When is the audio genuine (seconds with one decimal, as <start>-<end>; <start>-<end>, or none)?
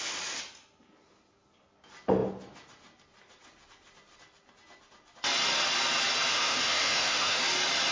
0.0-6.3; 7.4-7.9